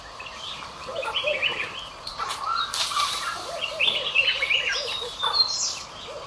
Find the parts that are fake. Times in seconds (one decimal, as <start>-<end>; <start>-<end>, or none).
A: none